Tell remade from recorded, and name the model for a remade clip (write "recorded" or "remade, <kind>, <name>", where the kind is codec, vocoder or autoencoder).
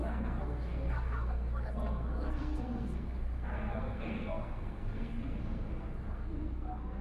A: remade, codec, SNAC